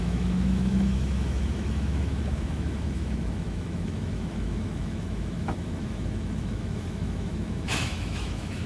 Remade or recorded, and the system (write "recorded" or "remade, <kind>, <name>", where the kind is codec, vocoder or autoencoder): remade, autoencoder, DAC-VAE